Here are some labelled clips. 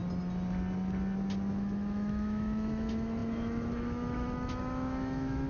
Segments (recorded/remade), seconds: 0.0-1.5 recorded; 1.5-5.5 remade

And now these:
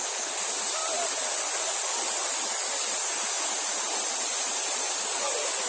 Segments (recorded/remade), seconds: 0.0-5.7 recorded

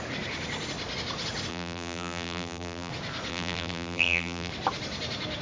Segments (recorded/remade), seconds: 0.0-1.5 recorded; 1.5-2.9 remade; 2.9-3.3 recorded; 3.3-4.5 remade; 4.5-5.4 recorded

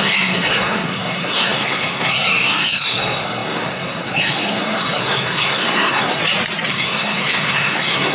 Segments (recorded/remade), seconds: 0.0-6.2 remade; 6.2-6.7 recorded; 6.7-8.1 remade

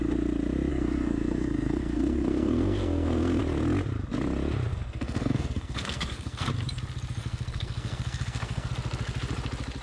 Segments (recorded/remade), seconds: 0.0-0.7 recorded; 0.7-3.4 remade; 3.4-4.7 recorded; 4.7-6.5 remade; 6.5-7.2 recorded; 7.2-8.7 remade; 8.7-9.8 recorded

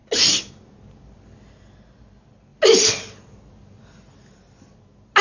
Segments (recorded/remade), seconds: 0.0-5.2 recorded